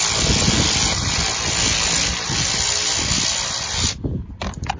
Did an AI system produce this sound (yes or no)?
no